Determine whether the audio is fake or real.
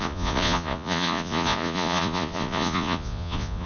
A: fake